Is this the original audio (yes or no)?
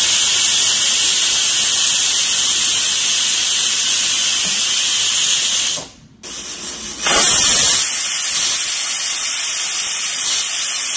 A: yes